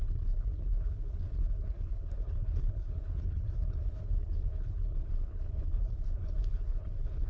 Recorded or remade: remade